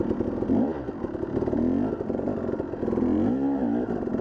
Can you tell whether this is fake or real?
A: real